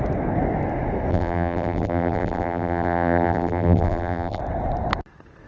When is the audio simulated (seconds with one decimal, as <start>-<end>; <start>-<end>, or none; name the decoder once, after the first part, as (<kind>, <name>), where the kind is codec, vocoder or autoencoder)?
1.1-4.4 (vocoder, BigVGAN v2)